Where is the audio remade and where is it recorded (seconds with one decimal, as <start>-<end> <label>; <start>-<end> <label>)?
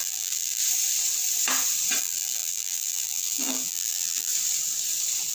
0.0-0.6 remade; 0.6-2.0 recorded; 2.0-4.3 remade; 4.3-5.3 recorded